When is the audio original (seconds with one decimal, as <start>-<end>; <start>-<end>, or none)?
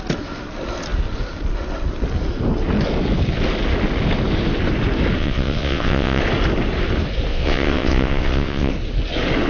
0.0-5.2; 6.2-7.3; 8.7-9.5